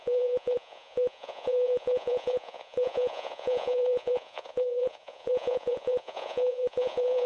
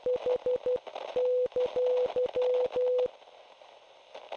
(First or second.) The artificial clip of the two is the first